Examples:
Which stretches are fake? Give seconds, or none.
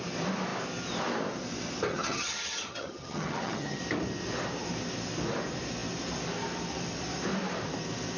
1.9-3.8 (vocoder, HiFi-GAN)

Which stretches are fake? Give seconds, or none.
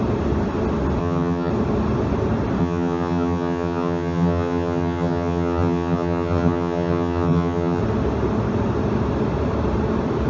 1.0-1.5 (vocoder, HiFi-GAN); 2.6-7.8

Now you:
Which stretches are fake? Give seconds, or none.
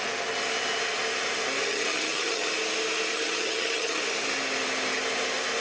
1.7-2.5 (vocoder, HiFi-GAN); 3.1-4.0